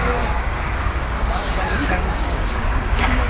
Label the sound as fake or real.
fake